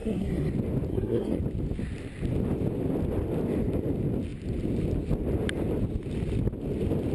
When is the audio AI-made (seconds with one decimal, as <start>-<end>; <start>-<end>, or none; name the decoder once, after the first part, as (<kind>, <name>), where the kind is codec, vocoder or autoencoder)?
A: 0.0-0.5 (codec, SNAC); 0.9-1.4

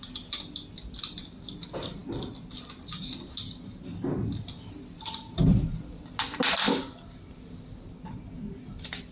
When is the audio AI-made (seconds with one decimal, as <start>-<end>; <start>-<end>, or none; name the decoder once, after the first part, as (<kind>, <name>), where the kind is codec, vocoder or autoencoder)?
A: none

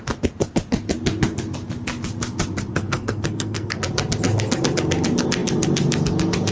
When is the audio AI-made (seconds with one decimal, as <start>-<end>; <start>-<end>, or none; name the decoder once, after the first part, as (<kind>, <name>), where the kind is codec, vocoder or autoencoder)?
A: 2.7-3.8 (codec, SNAC)